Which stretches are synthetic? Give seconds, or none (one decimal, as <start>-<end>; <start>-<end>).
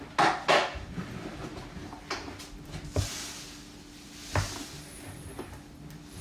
none